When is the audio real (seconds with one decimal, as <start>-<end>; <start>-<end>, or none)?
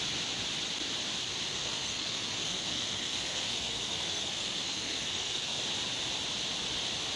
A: 0.0-1.5; 5.6-7.2